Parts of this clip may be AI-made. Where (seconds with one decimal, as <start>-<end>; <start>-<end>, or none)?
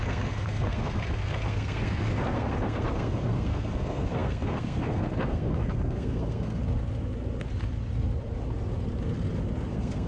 0.0-6.6; 9.7-10.1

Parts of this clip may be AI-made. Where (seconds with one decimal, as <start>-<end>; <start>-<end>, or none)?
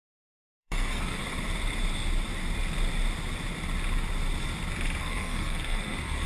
0.0-1.2; 5.0-6.3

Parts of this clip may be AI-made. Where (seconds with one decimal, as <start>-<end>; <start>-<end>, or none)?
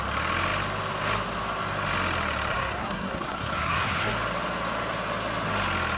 2.5-4.1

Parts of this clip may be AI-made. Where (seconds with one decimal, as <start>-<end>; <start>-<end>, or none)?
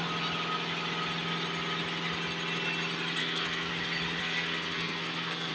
3.2-3.7; 4.2-5.5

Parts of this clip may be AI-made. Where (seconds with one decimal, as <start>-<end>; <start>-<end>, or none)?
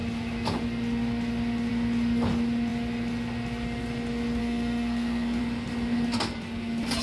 4.4-5.4